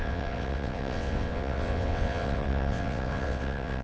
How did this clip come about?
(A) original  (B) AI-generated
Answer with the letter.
B